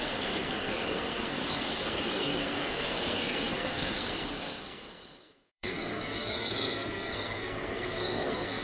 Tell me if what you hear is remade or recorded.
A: remade